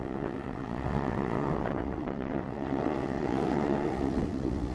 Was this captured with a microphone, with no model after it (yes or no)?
no